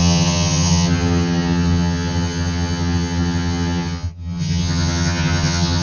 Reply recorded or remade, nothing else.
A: remade